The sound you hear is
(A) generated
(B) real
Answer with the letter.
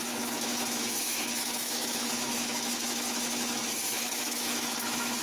A